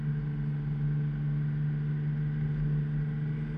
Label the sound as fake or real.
real